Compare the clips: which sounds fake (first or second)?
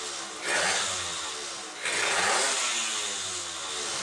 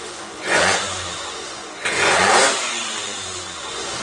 second